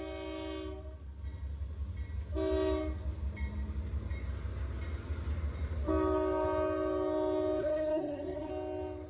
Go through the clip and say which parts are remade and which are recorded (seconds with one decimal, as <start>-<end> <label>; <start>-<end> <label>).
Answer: 0.0-7.6 recorded; 7.6-8.5 remade; 8.5-9.1 recorded